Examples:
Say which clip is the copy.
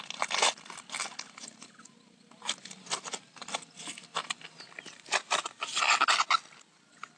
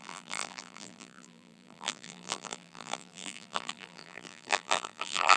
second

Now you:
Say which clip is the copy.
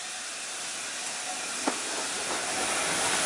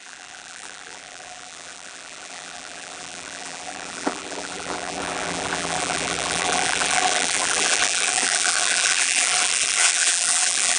second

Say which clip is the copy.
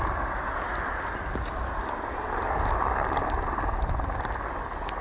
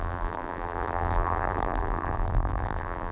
second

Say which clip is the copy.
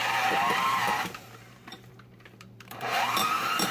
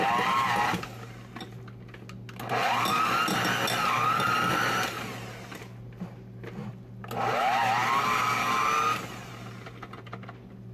first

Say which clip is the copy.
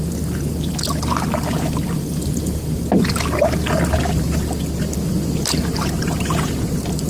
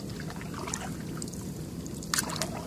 first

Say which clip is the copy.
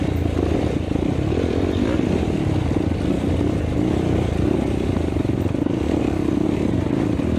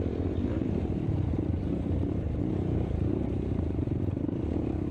second